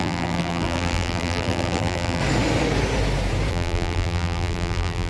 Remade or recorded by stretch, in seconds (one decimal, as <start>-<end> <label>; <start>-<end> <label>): 0.0-2.2 remade; 2.2-3.5 recorded; 3.5-5.1 remade